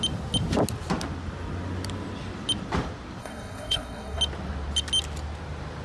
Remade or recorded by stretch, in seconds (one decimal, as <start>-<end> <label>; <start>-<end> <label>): 0.0-3.2 recorded; 3.2-4.2 remade; 4.2-5.8 recorded